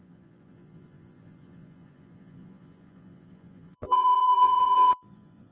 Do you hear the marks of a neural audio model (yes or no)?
yes